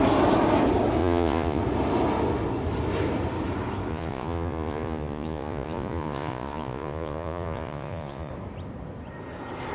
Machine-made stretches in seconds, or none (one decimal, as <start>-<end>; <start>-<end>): 1.0-1.6; 3.9-8.3